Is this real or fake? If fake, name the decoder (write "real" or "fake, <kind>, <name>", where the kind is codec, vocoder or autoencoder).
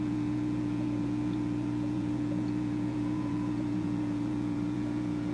fake, vocoder, Vocos